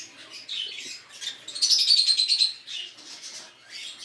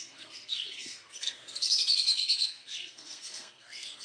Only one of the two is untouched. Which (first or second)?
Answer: first